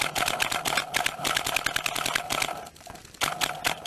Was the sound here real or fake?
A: real